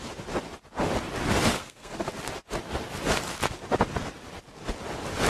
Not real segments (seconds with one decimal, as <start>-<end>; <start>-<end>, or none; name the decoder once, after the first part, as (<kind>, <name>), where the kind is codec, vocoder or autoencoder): 1.5-2.1 (codec, SNAC)